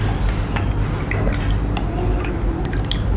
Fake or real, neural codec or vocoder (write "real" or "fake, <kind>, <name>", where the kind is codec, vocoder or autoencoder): real